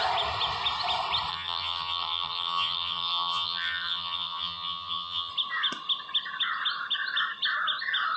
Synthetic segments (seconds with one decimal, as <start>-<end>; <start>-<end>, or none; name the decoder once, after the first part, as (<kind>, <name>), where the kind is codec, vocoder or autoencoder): 1.3-5.3 (vocoder, HiFi-GAN)